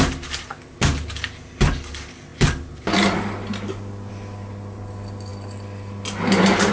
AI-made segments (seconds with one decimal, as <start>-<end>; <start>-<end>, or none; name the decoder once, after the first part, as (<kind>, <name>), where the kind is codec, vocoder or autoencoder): none